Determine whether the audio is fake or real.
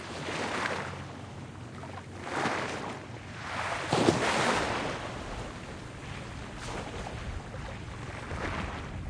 real